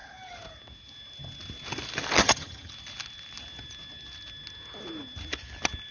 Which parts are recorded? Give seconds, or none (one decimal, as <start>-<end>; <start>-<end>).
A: 0.0-2.2; 2.7-5.9